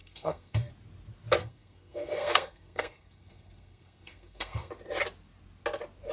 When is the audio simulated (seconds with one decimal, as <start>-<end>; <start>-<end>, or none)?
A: 0.0-0.7; 1.4-4.7